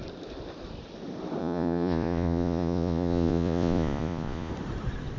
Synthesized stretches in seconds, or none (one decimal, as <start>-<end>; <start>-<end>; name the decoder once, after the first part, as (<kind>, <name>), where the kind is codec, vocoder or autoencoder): 1.4-4.5 (vocoder, Vocos)